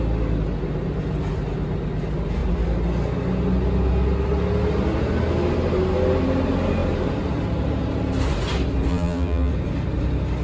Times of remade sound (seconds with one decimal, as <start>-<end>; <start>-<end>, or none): 8.9-9.5